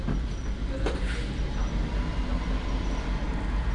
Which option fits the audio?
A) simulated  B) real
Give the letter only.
B